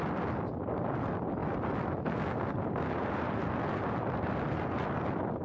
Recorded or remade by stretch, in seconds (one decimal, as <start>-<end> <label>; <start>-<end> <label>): 0.0-5.4 recorded